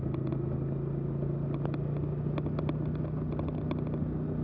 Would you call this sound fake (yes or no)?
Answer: no